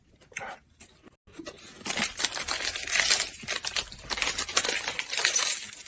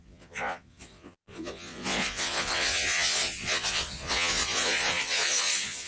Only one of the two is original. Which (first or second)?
first